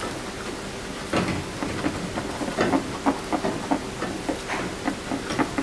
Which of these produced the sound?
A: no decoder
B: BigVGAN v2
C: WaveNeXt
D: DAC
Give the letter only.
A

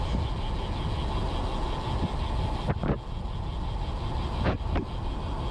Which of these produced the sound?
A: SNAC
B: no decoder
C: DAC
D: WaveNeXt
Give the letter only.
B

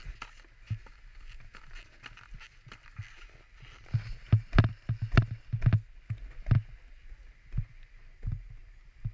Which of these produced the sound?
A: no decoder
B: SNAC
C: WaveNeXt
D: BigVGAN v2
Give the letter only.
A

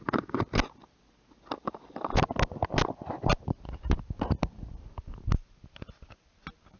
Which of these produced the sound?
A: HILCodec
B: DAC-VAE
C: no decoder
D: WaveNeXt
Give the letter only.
C